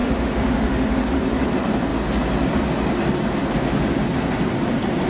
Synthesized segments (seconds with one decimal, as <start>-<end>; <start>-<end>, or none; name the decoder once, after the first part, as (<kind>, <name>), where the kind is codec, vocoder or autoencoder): 0.0-1.2 (autoencoder, DAC-VAE)